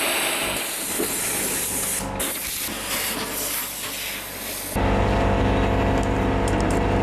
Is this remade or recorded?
recorded